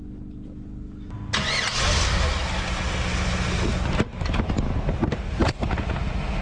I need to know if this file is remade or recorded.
recorded